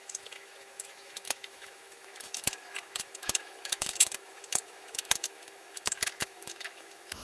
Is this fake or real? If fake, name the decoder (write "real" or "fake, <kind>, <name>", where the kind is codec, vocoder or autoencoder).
fake, autoencoder, DAC-VAE